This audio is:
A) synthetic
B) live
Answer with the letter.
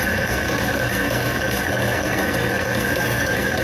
A